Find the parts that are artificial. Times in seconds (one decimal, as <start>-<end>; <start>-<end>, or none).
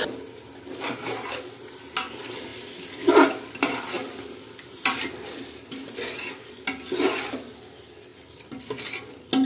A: none